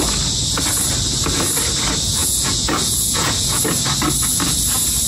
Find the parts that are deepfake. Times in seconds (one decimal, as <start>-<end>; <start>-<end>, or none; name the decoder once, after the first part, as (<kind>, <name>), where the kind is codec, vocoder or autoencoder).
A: 2.2-3.6 (vocoder, Vocos)